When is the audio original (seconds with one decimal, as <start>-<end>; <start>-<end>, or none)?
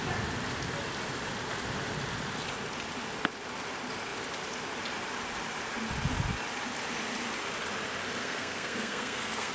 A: 0.0-8.2